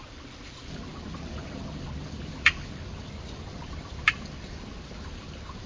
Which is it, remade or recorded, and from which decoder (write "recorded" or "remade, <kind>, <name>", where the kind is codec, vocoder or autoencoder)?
remade, vocoder, BigVGAN v2